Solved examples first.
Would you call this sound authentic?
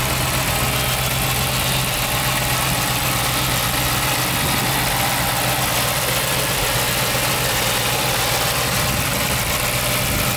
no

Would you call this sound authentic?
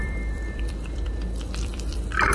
no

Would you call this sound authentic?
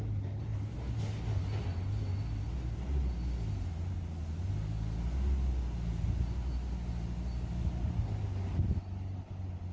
yes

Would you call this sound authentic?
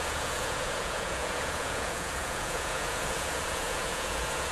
no